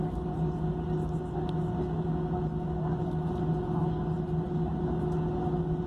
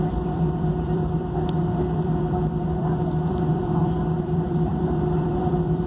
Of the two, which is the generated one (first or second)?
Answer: second